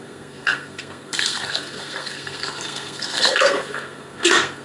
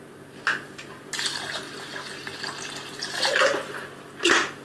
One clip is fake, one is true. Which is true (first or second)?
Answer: second